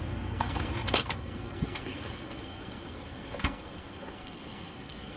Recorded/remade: remade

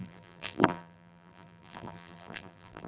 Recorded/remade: remade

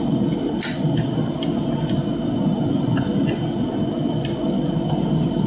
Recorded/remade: recorded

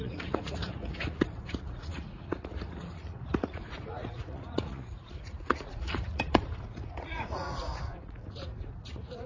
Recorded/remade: remade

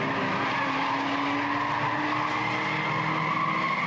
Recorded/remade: recorded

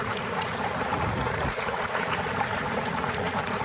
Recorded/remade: remade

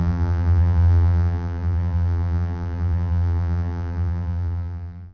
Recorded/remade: remade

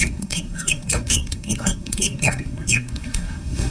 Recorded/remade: remade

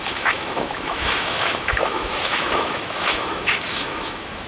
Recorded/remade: remade